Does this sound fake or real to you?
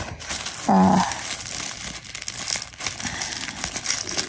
real